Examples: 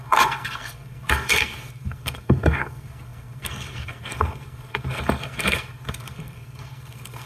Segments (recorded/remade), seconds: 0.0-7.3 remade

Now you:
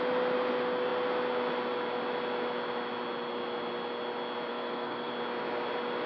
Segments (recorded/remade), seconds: 0.0-4.5 recorded; 4.5-5.1 remade; 5.1-6.1 recorded

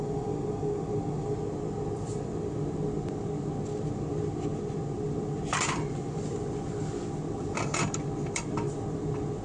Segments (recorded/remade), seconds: 0.0-9.4 recorded

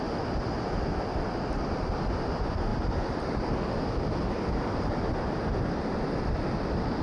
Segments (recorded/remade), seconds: 0.0-7.0 recorded

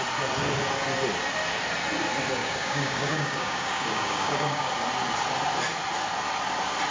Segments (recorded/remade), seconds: 0.0-2.4 recorded; 2.4-4.7 remade; 4.7-6.9 recorded

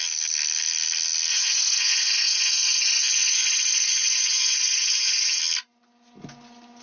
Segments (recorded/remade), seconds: 0.0-1.3 recorded; 1.3-5.4 remade; 5.4-6.8 recorded

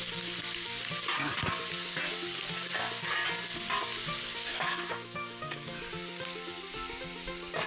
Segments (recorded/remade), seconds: 0.0-4.5 recorded; 4.5-5.7 remade; 5.7-7.7 recorded

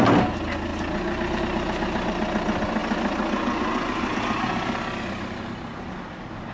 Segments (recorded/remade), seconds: 0.0-6.5 recorded